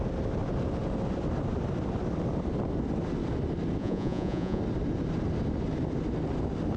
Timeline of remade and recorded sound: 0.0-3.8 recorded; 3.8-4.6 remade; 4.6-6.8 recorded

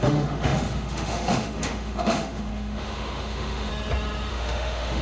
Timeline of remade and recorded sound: 0.0-3.7 remade; 3.7-4.3 recorded; 4.3-5.0 remade

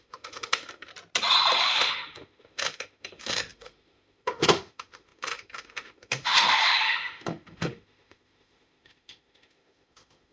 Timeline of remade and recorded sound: 0.0-0.9 remade; 0.9-1.6 recorded; 1.6-10.3 remade

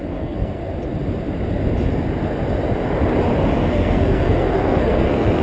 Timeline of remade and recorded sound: 0.0-0.6 remade; 0.6-3.7 recorded; 3.7-5.4 remade

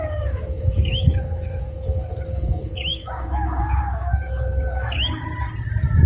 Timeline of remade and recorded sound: 0.0-5.2 remade; 5.2-6.1 recorded

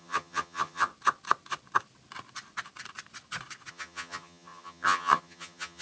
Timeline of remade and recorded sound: 0.0-0.9 remade; 0.9-3.7 recorded; 3.7-5.8 remade

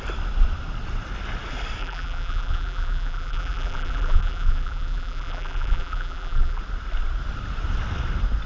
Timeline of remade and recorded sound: 0.0-1.8 recorded; 1.8-6.6 remade; 6.6-8.5 recorded